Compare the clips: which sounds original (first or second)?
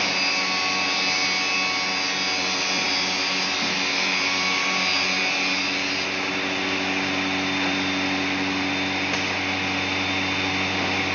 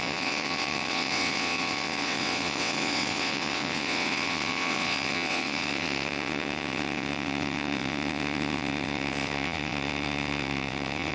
first